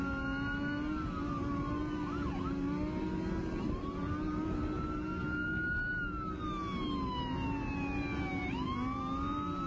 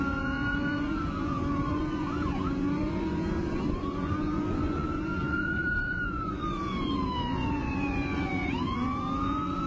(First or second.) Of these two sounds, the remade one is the second